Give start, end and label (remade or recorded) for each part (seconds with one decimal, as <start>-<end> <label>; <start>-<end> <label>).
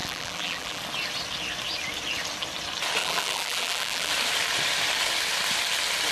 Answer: 0.0-0.8 remade; 0.8-3.0 recorded; 3.0-4.1 remade; 4.1-6.1 recorded